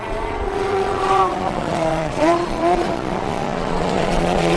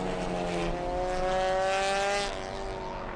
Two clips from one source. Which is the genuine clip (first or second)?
second